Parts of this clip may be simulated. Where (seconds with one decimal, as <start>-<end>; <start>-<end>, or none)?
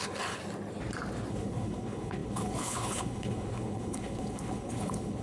0.0-0.4; 1.3-5.2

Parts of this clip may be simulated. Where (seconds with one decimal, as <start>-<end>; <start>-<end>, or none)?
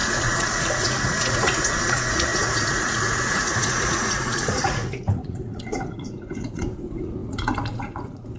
0.0-8.4